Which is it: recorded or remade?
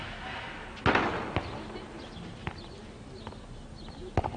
recorded